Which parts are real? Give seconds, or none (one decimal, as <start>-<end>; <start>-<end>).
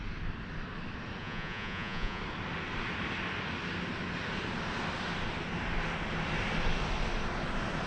0.0-1.2; 2.2-7.9